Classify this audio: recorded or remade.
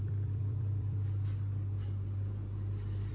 remade